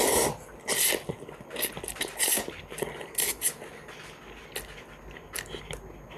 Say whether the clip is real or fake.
real